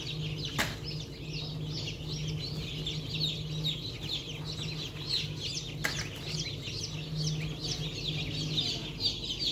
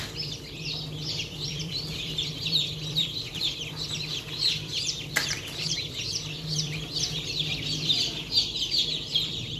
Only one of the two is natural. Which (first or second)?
first